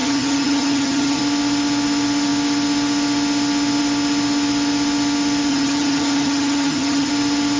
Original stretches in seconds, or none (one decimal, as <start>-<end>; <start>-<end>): 1.2-5.5; 7.1-7.6